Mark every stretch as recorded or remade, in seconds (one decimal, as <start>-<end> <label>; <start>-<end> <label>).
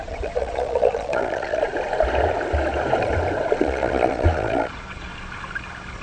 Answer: 0.0-1.7 remade; 1.7-3.6 recorded; 3.6-5.1 remade; 5.1-6.0 recorded